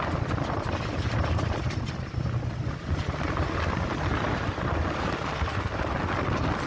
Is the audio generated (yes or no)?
no